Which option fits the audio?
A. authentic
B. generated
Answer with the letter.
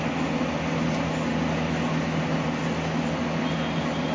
A